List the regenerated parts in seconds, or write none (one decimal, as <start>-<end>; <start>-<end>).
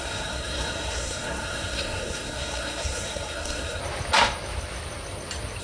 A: 0.0-3.8